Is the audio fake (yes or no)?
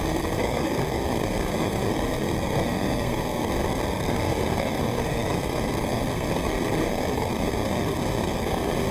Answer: yes